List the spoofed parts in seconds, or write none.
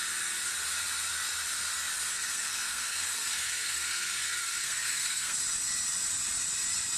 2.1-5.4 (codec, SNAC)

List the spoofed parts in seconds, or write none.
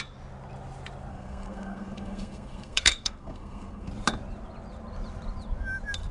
1.1-3.9 (codec, SNAC)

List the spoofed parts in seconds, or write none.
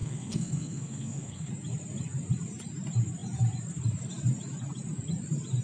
0.0-1.5 (codec, SNAC)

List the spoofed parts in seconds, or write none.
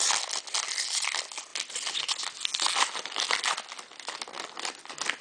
none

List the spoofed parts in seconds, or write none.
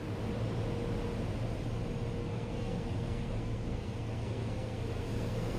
2.2-5.6 (codec, SNAC)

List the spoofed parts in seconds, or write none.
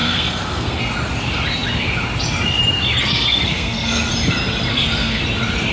0.0-0.8 (codec, SNAC); 3.0-4.1; 4.7-5.2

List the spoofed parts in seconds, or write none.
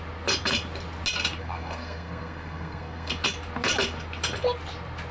1.4-3.1 (codec, SNAC)